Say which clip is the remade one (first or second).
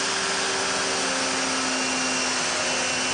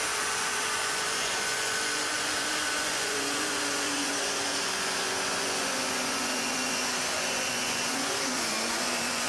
second